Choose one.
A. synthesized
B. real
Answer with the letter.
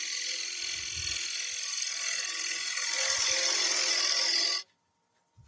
B